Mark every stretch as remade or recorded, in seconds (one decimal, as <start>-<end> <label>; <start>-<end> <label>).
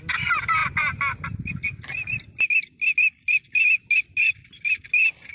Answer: 0.0-5.3 recorded